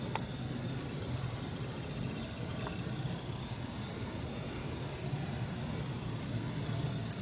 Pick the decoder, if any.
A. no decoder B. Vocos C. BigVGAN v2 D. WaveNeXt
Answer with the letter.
A